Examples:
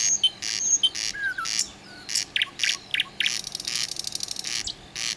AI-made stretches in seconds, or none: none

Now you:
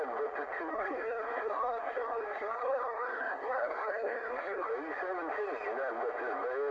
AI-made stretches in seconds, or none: 0.7-4.7 (codec, SNAC)

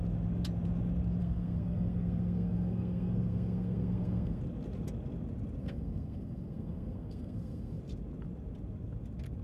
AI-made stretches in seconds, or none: 1.2-4.4 (codec, SNAC); 5.6-7.8